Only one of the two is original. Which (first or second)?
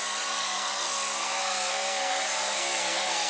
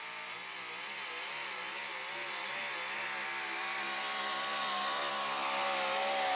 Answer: second